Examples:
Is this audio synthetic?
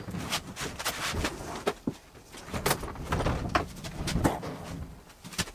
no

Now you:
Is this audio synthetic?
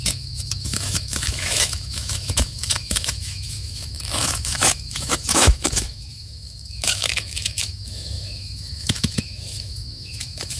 yes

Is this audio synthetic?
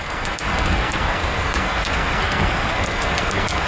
yes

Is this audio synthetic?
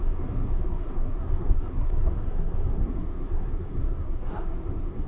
yes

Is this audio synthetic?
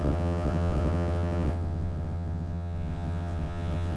yes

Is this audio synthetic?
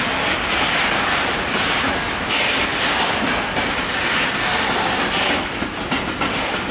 no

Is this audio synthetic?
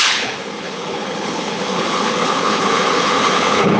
yes